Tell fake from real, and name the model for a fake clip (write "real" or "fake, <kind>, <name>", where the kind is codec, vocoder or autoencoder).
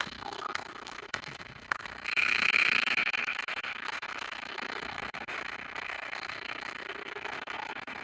fake, autoencoder, DAC-VAE